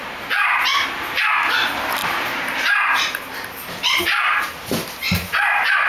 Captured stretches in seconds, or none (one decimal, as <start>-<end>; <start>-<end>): 0.0-0.4; 1.2-2.0; 4.0-5.9